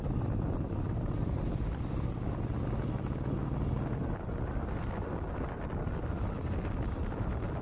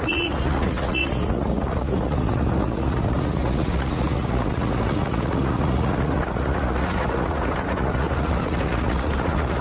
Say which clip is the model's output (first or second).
second